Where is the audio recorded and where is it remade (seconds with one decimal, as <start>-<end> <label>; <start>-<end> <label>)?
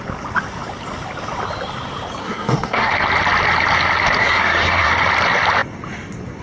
0.0-2.2 recorded; 2.2-2.9 remade; 2.9-4.2 recorded; 4.2-4.9 remade; 4.9-6.4 recorded